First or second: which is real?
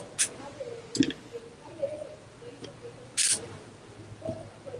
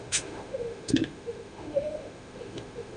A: first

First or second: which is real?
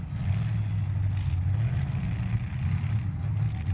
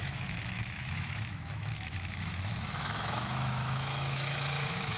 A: first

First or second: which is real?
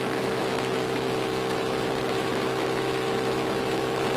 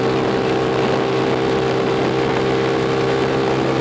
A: second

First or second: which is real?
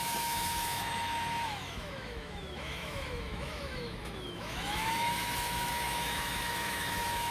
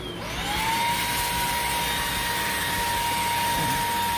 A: second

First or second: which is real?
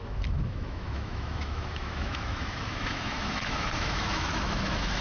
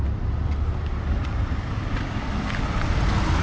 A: second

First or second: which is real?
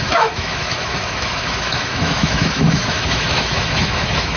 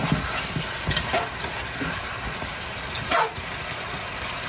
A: second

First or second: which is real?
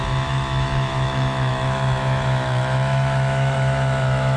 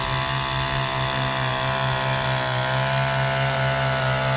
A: second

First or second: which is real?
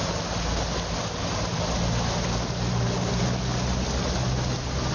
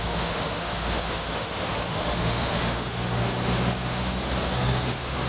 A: first